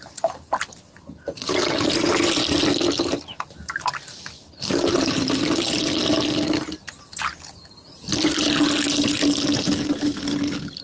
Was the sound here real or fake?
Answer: real